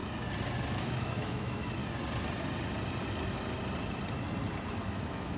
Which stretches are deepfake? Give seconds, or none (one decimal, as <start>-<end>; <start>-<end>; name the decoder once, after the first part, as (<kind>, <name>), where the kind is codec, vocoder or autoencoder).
0.7-1.8 (autoencoder, DAC-VAE); 4.7-5.4